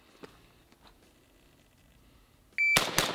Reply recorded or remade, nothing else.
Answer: recorded